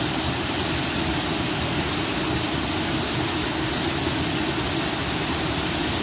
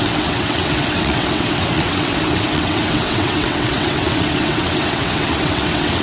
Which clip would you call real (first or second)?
first